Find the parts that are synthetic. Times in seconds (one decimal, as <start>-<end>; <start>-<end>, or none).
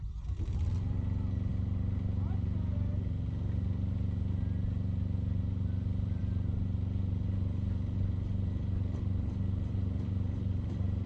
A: none